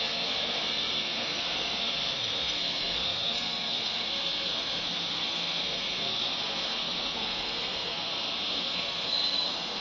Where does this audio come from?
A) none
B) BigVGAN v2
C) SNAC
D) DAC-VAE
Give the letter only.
C